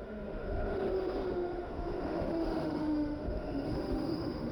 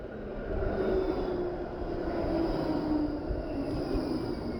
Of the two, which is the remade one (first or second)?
first